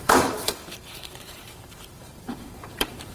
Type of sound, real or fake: fake